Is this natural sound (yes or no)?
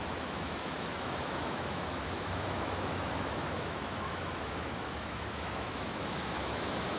no